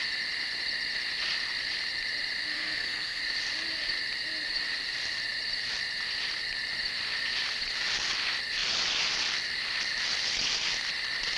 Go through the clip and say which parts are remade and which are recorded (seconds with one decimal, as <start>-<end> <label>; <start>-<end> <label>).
0.0-2.5 recorded; 2.5-3.2 remade; 3.2-11.4 recorded